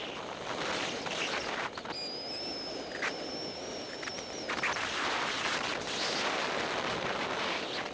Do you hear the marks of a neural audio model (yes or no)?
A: no